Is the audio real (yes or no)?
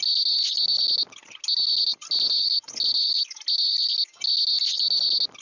yes